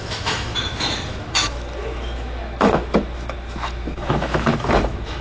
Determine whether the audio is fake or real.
fake